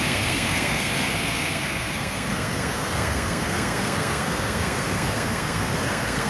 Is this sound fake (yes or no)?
yes